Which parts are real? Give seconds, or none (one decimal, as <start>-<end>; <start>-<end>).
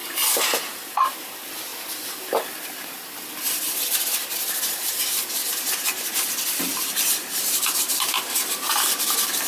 1.1-6.7; 7.9-9.5